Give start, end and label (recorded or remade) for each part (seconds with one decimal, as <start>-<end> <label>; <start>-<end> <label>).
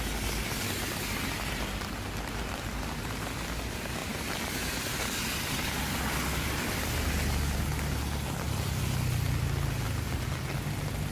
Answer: 0.0-11.1 recorded